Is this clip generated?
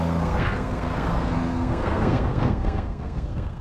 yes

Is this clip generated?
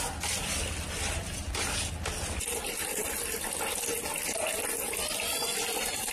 no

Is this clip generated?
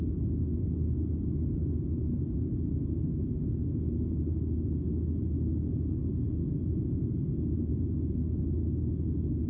no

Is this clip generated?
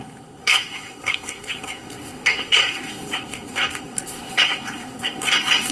yes